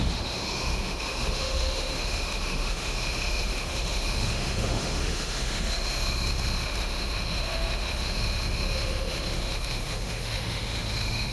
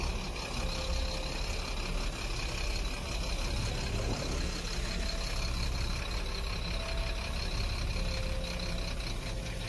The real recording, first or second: second